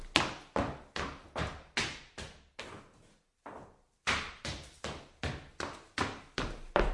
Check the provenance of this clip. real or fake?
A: real